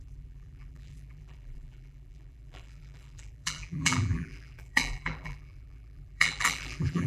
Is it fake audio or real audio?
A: fake